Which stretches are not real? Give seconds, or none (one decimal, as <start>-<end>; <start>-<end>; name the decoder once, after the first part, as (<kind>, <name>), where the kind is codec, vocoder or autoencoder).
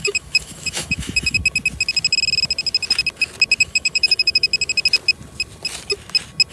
0.0-1.4 (autoencoder, DAC-VAE); 3.6-4.5